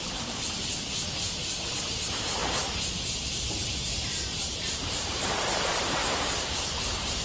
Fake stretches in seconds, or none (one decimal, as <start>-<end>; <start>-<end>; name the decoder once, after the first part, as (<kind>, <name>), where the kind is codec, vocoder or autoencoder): 0.0-2.4 (vocoder, BigVGAN v2); 3.6-7.2